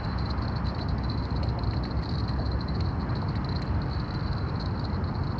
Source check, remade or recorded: recorded